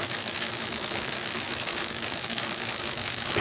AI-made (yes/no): yes